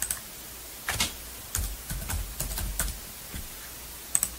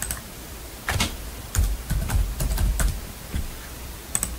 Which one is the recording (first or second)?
first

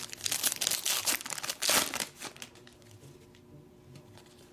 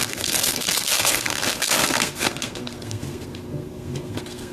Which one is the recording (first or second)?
first